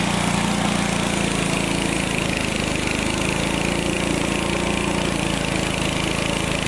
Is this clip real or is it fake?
real